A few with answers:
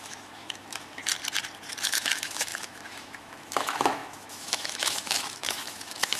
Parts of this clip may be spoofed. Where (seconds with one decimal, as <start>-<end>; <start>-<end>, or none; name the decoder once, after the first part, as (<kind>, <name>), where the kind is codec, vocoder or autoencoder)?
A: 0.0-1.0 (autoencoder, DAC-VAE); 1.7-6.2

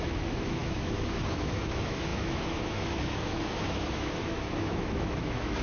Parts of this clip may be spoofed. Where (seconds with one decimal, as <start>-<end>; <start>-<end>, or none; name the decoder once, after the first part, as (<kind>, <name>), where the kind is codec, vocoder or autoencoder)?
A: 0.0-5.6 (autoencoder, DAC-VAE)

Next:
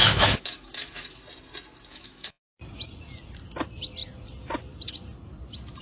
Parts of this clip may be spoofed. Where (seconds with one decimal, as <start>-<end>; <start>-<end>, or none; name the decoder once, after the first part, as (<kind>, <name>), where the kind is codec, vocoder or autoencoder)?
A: 0.0-1.2 (autoencoder, DAC-VAE); 1.9-2.5

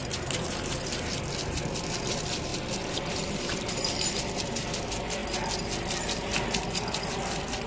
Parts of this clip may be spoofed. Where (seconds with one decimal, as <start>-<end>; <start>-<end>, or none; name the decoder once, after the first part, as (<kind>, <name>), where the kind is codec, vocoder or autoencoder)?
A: none

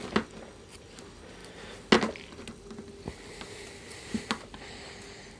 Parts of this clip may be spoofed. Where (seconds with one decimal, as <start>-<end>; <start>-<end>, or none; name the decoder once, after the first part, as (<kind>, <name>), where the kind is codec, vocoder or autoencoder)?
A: none